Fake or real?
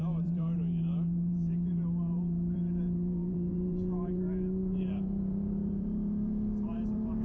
fake